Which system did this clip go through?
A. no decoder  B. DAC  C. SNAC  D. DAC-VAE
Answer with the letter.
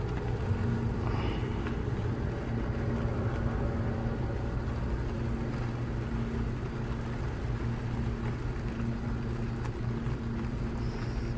A